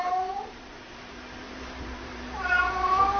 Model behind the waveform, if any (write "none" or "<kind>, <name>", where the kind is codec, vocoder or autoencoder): vocoder, BigVGAN v2